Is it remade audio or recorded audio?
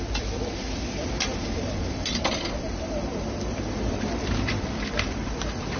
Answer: remade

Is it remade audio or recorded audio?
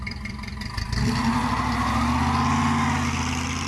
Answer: recorded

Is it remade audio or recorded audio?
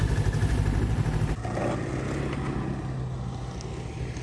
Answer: recorded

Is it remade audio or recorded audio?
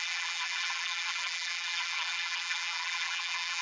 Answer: remade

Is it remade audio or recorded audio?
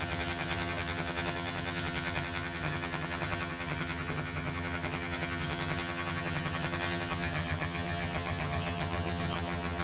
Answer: remade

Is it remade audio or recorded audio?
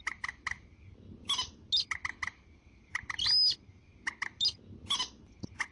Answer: recorded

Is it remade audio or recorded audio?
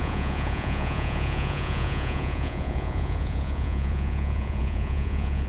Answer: remade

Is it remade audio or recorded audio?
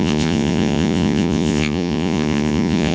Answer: remade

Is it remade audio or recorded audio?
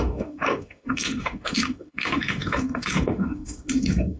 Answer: remade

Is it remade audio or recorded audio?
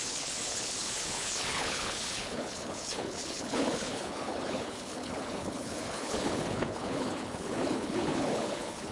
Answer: remade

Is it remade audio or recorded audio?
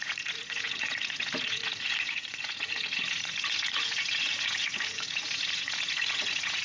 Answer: remade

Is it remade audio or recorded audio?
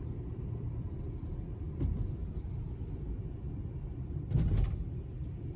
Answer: recorded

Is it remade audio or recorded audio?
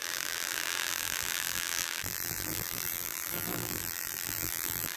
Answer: remade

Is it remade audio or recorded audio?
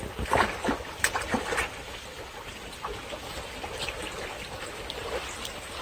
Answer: recorded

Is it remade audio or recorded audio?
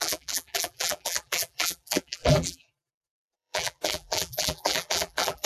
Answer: remade